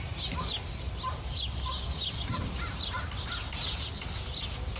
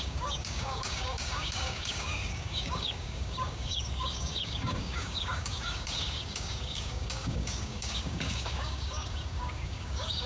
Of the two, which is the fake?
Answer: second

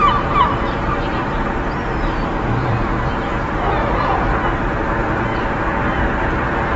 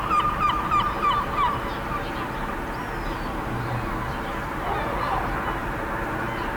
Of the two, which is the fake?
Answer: first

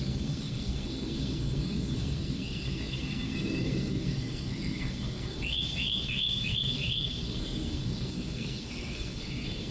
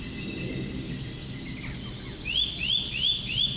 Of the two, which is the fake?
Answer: first